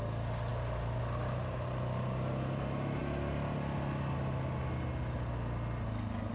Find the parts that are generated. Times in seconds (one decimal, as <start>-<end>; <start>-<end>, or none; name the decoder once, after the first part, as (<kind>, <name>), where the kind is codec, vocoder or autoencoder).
none